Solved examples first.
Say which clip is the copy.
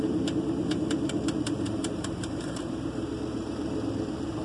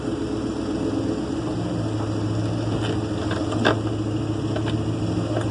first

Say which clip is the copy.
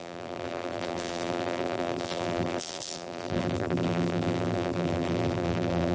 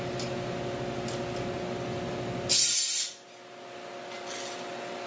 first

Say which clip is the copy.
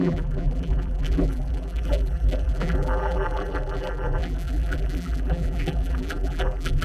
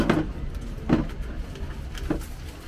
first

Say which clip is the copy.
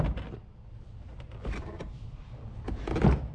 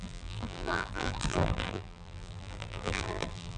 second